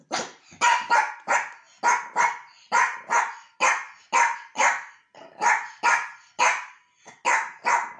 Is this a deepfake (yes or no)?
no